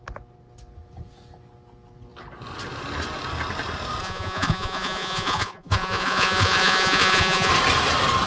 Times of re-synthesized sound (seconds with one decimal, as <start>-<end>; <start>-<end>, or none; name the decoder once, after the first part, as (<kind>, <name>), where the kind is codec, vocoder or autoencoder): 4.0-7.5 (vocoder, Vocos)